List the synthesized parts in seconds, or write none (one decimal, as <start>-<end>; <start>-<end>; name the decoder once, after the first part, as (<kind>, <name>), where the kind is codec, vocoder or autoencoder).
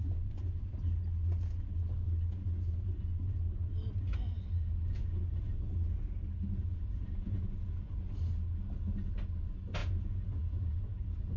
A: 6.7-7.9 (vocoder, Vocos); 9.8-11.0